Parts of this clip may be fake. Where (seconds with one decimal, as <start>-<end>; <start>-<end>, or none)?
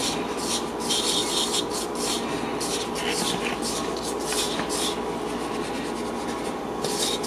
none